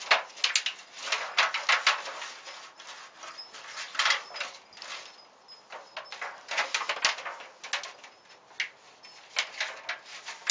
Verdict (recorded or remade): recorded